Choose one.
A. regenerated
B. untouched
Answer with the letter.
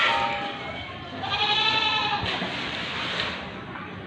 A